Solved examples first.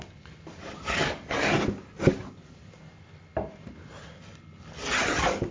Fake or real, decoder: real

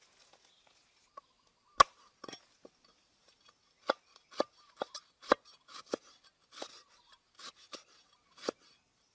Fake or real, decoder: real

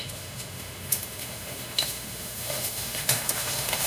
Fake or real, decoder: fake, autoencoder, DAC-VAE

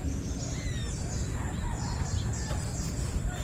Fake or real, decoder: real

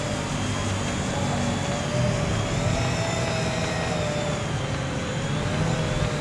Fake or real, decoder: real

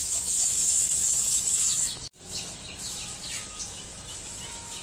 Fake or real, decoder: fake, autoencoder, DAC-VAE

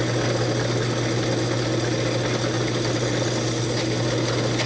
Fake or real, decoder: real